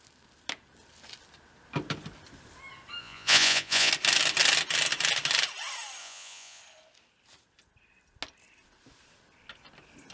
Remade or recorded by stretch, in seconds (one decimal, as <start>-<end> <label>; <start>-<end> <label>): 0.0-3.0 recorded; 3.0-3.9 remade; 3.9-6.0 recorded; 6.0-6.6 remade; 6.6-10.1 recorded